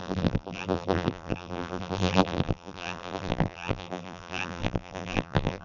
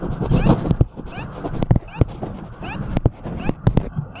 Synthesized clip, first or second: first